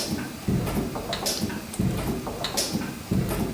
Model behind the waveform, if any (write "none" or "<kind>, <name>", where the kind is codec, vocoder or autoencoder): none